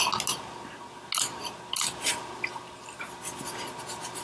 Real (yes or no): yes